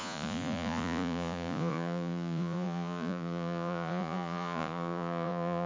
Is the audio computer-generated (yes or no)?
yes